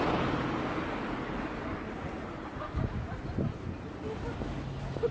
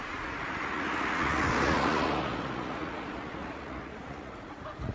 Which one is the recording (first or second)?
first